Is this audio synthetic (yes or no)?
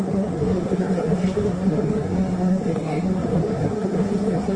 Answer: yes